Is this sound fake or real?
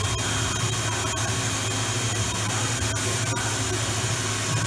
real